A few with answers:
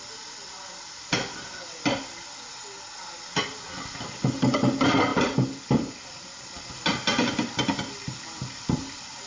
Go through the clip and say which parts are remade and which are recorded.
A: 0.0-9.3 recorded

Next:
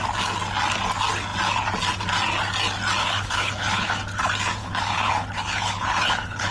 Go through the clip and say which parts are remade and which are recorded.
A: 0.0-3.0 recorded; 3.0-3.9 remade; 3.9-4.6 recorded; 4.6-6.5 remade

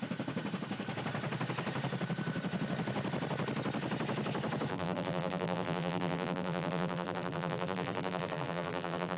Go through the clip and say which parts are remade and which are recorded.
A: 0.0-4.7 recorded; 4.7-9.2 remade

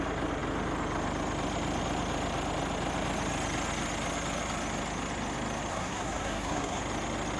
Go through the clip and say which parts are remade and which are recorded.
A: 0.0-5.7 recorded; 5.7-6.8 remade; 6.8-7.4 recorded

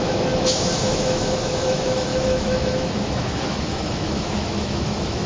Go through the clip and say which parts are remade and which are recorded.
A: 0.0-5.3 remade